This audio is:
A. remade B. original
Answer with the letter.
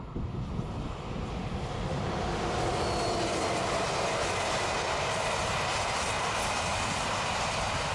B